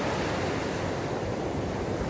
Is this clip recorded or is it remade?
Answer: recorded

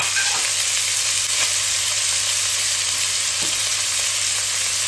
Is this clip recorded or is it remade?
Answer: recorded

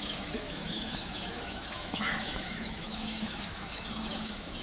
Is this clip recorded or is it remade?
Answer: remade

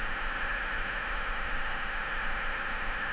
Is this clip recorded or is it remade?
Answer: remade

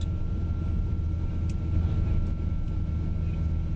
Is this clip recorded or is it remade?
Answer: recorded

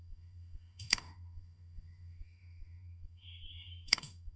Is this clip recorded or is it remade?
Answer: remade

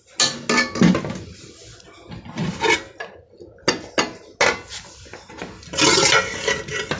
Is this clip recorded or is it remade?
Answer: recorded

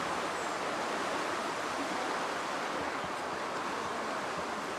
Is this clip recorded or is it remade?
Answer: recorded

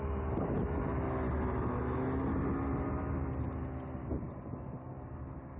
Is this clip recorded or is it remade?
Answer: recorded